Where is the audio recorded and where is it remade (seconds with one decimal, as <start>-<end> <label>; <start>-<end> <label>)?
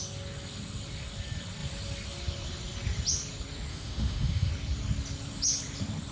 0.0-3.7 recorded; 3.7-4.5 remade; 4.5-6.1 recorded